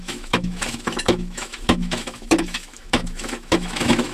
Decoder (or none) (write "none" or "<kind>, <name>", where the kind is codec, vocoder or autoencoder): autoencoder, DAC-VAE